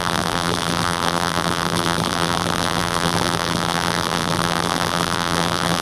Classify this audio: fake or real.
fake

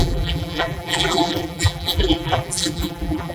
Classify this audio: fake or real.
fake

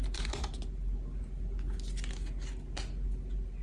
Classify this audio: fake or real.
real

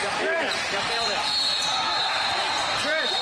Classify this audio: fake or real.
fake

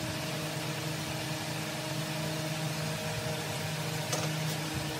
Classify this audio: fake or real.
real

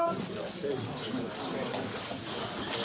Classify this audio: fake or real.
real